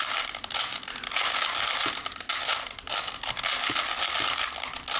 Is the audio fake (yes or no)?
no